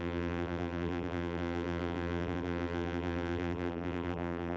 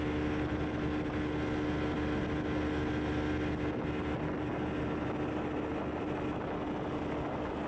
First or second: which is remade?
first